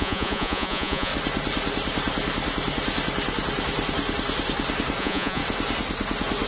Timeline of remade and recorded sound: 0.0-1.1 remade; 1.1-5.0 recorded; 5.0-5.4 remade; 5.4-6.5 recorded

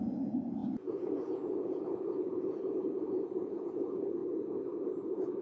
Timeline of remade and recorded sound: 0.0-4.2 remade; 4.2-5.4 recorded

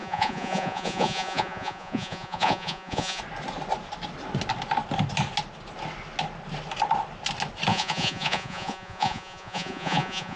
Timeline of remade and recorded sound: 0.0-3.2 remade; 3.2-7.7 recorded; 7.7-10.4 remade

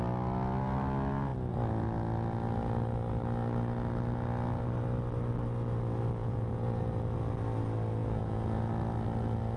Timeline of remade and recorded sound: 0.0-6.2 recorded; 6.2-6.8 remade; 6.8-8.0 recorded; 8.0-8.7 remade; 8.7-9.6 recorded

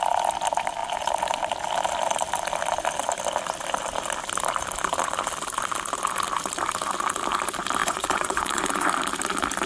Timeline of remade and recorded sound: 0.0-7.8 recorded; 7.8-8.9 remade; 8.9-9.7 recorded